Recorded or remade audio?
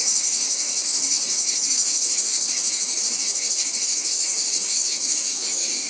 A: remade